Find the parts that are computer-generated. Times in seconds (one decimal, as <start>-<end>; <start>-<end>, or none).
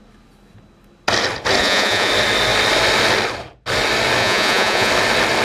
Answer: 1.6-2.1; 4.2-4.9